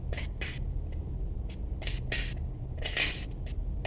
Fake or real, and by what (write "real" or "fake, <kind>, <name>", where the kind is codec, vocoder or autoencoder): real